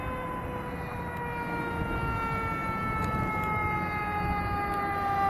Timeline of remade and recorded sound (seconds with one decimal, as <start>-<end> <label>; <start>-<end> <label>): 0.0-5.3 recorded